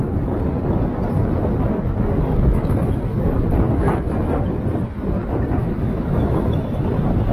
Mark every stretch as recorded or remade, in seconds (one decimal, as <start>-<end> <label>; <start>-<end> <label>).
0.0-5.6 recorded; 5.6-6.4 remade; 6.4-7.3 recorded